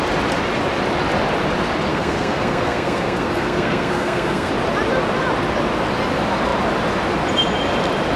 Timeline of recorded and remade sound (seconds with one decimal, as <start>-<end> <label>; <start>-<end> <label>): 0.0-1.9 recorded; 1.9-4.5 remade; 4.5-8.2 recorded